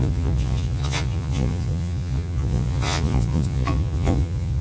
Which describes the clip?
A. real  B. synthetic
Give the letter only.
B